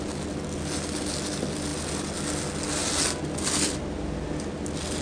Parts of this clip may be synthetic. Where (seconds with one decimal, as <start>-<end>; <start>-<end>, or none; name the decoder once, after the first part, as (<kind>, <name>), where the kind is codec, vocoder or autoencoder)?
none